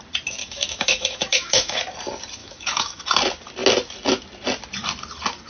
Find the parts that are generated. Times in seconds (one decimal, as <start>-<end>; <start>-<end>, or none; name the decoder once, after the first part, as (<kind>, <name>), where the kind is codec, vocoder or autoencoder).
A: 0.4-1.8 (autoencoder, DAC-VAE); 2.4-3.0

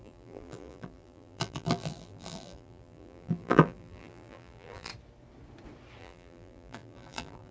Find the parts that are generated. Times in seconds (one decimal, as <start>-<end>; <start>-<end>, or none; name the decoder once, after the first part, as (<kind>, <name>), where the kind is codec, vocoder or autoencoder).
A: 0.0-4.9 (vocoder, BigVGAN v2); 6.0-7.5

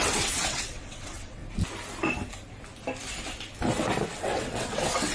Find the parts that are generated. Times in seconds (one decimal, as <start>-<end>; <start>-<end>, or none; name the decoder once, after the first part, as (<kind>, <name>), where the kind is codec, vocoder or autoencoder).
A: 0.0-1.4 (vocoder, WaveNeXt); 4.1-5.1